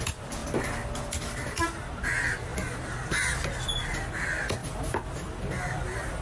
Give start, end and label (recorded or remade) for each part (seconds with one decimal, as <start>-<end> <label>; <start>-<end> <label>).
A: 0.0-6.2 recorded